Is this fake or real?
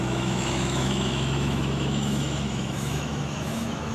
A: fake